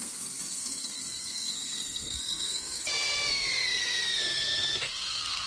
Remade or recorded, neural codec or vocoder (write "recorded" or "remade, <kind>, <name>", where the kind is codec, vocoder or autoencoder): remade, codec, SNAC